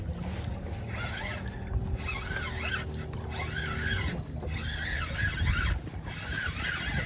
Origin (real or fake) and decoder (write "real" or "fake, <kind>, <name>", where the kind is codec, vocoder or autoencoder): real